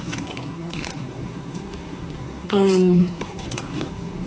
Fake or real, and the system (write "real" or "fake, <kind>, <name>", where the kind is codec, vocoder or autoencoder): fake, codec, SNAC